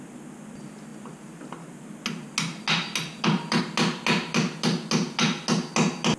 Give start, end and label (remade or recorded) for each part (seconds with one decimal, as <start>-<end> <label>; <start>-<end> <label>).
0.0-6.2 recorded